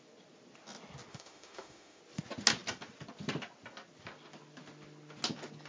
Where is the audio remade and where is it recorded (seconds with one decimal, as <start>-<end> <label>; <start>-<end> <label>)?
0.0-1.1 recorded; 1.1-2.0 remade; 2.0-5.7 recorded